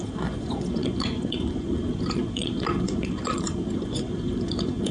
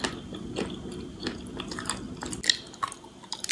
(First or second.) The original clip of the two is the second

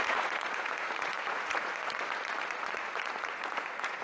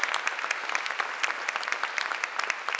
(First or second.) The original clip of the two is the second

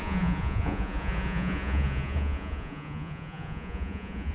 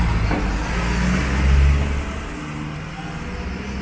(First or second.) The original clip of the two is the second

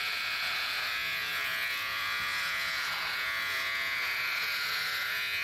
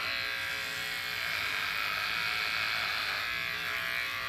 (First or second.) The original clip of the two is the second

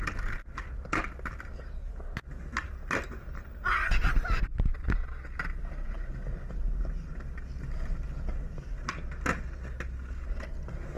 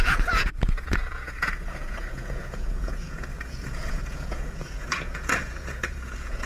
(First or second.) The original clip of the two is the first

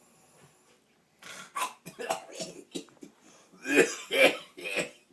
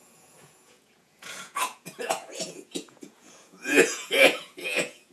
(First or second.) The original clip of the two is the first